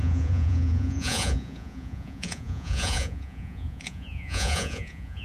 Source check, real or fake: fake